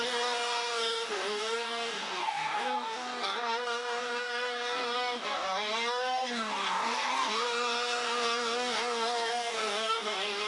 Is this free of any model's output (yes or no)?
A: no